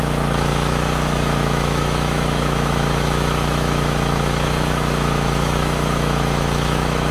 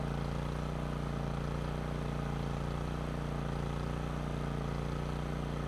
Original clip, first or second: second